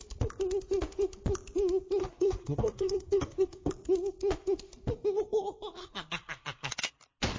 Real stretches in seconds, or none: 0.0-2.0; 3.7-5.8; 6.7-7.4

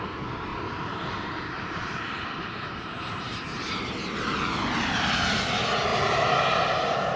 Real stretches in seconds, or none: 0.0-0.5; 4.7-5.9

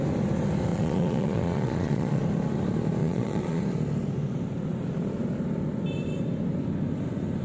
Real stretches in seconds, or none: 0.0-0.7; 2.2-3.0; 3.6-7.4

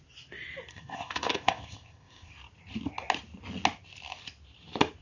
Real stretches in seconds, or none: 0.0-0.7; 2.3-5.0

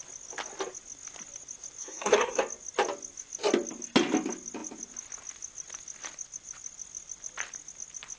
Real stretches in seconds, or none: 0.0-1.8; 2.4-8.2

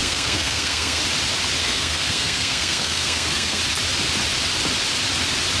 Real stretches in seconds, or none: 1.0-1.6; 3.6-5.6